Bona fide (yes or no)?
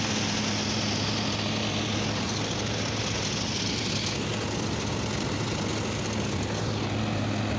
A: yes